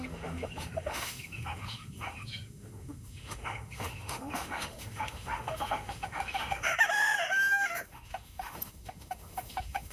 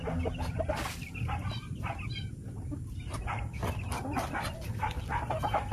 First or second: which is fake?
first